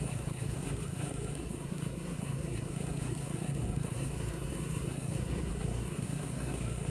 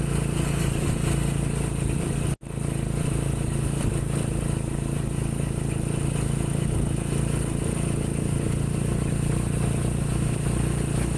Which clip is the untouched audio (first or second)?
second